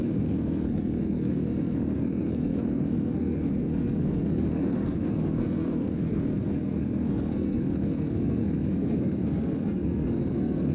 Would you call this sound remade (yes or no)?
yes